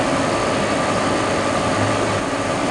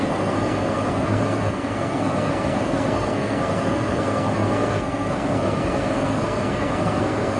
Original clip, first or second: first